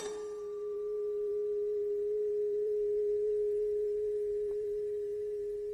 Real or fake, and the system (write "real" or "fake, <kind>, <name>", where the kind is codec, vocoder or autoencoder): fake, vocoder, BigVGAN v2